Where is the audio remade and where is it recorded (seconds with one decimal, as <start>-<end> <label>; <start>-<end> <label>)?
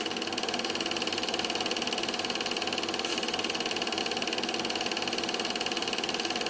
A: 0.0-3.1 recorded; 3.1-4.0 remade; 4.0-6.5 recorded